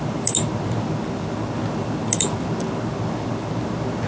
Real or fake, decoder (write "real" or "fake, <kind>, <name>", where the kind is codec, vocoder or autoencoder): real